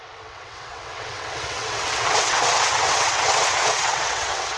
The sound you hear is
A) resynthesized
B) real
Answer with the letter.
A